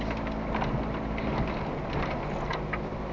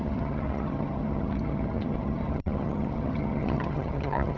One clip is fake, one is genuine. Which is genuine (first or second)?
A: first